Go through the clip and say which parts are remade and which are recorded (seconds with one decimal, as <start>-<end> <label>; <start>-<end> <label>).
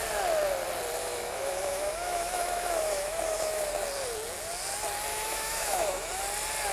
0.0-1.0 recorded; 1.0-3.7 remade; 3.7-5.1 recorded; 5.1-6.1 remade; 6.1-6.7 recorded